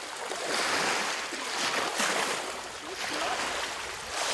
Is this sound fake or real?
real